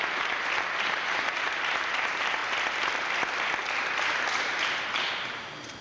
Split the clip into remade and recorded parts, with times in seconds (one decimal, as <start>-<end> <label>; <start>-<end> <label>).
0.0-2.4 remade; 2.4-5.8 recorded